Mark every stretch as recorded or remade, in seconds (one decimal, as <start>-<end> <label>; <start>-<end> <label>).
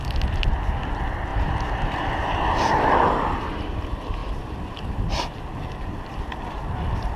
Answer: 0.0-1.3 recorded; 1.3-3.1 remade; 3.1-7.2 recorded